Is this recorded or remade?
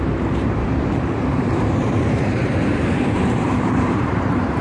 remade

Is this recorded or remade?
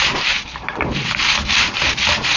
remade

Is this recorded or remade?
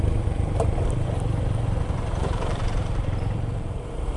remade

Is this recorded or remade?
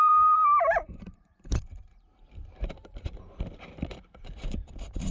remade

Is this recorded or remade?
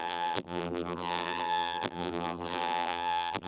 remade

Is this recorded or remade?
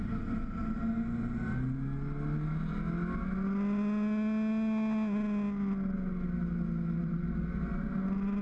recorded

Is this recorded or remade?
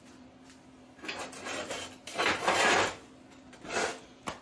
remade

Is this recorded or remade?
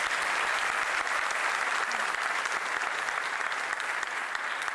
recorded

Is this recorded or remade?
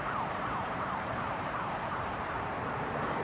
remade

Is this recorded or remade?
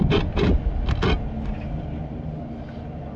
recorded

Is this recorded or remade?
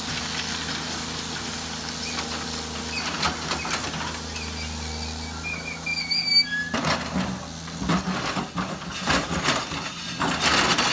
recorded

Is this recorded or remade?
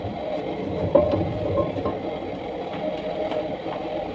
remade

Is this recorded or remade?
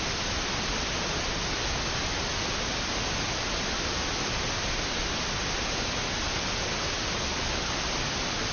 recorded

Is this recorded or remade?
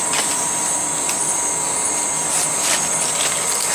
remade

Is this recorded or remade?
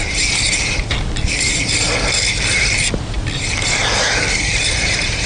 recorded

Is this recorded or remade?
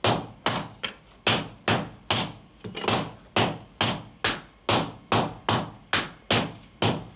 recorded